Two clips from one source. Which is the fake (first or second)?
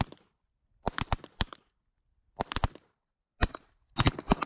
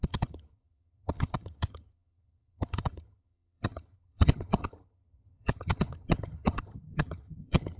second